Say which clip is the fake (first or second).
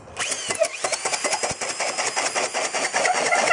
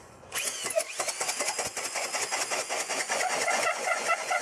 second